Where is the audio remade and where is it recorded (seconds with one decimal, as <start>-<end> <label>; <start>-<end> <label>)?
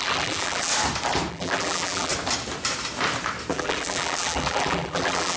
0.0-0.7 remade; 0.7-1.3 recorded; 1.3-2.1 remade; 2.1-3.5 recorded; 3.5-5.4 remade